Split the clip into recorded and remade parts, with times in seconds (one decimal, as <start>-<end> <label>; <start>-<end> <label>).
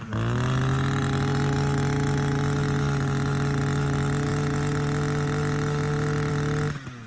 0.0-7.1 recorded